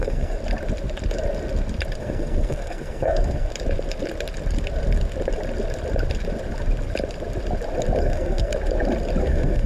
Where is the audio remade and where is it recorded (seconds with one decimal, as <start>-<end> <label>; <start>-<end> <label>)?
0.0-0.4 remade; 0.4-2.0 recorded; 2.0-3.5 remade; 3.5-8.0 recorded; 8.0-8.5 remade; 8.5-9.2 recorded; 9.2-9.7 remade